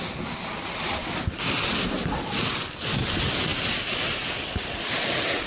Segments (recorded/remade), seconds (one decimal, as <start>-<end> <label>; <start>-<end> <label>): 0.0-5.5 recorded